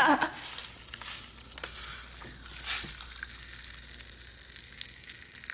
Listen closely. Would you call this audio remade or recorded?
recorded